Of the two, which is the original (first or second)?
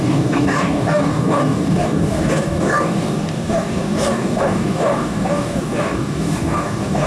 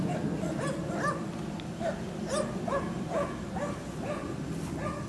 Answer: second